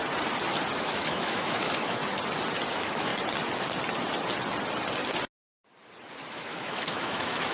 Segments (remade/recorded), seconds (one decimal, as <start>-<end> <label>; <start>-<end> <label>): 0.0-0.8 recorded; 0.8-2.0 remade; 2.0-2.7 recorded; 2.7-3.1 remade; 3.1-6.3 recorded; 6.3-7.5 remade